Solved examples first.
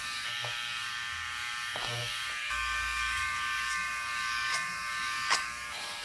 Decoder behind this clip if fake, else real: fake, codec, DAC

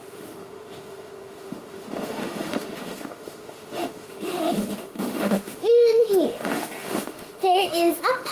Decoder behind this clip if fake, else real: fake, autoencoder, DAC-VAE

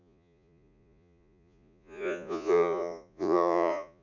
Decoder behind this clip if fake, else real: fake, vocoder, Vocos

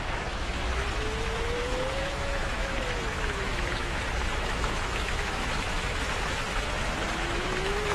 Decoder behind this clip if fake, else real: fake, autoencoder, DAC-VAE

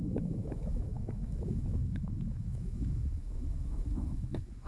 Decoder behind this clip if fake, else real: fake, autoencoder, DAC-VAE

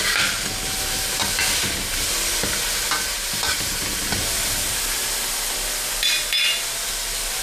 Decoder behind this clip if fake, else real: real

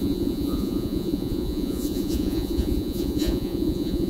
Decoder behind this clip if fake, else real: fake, vocoder, Vocos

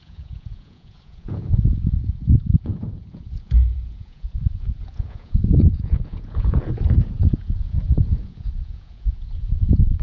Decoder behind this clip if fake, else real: fake, vocoder, Vocos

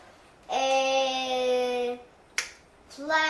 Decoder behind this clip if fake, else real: real